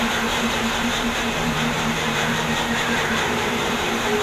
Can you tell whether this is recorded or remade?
remade